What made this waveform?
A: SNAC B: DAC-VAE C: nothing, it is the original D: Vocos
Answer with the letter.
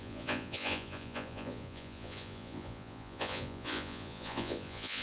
D